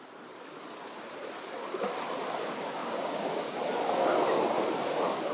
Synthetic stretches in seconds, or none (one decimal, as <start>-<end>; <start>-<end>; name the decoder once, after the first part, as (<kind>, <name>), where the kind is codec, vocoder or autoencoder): 2.8-3.6 (codec, DAC)